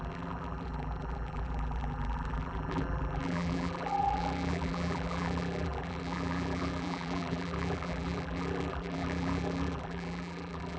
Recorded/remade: remade